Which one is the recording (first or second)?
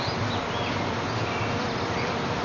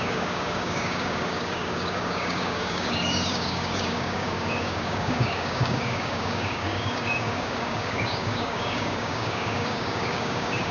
first